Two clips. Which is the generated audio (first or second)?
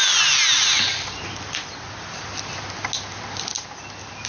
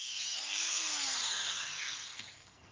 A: second